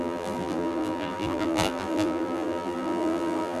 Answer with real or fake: fake